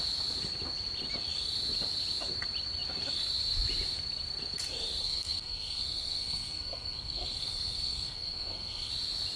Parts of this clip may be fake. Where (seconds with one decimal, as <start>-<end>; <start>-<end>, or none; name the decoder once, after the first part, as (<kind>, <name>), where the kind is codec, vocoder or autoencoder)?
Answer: 5.0-8.9 (codec, SNAC)